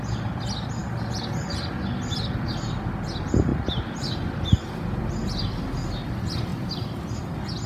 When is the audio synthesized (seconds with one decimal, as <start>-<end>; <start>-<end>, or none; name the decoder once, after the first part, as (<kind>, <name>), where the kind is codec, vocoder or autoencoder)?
none